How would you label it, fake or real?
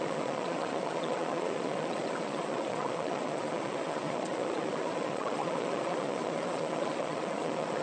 fake